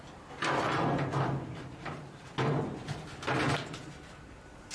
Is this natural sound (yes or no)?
yes